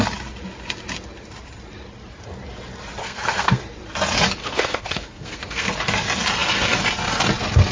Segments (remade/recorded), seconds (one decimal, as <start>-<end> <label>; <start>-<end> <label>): 0.0-3.0 recorded; 3.0-3.6 remade; 3.6-4.4 recorded; 4.4-5.7 remade; 5.7-7.7 recorded